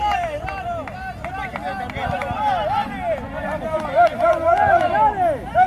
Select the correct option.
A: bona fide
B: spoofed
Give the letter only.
A